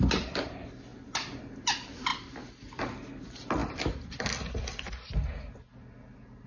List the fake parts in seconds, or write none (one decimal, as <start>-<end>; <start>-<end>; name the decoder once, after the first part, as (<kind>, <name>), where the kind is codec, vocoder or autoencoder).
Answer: 2.1-2.8 (vocoder, BigVGAN v2); 3.6-5.1